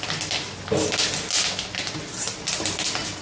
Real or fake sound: real